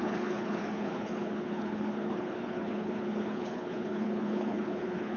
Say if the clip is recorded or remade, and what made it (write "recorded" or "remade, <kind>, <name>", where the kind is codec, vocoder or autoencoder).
remade, codec, HILCodec